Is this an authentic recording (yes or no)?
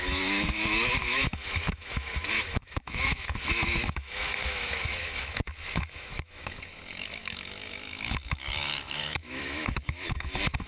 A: no